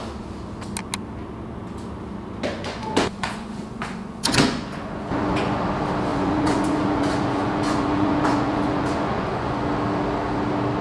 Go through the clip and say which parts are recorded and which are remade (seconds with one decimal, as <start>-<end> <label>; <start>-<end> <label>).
0.0-2.5 recorded; 2.5-5.6 remade; 5.6-6.1 recorded; 6.1-9.7 remade; 9.7-10.8 recorded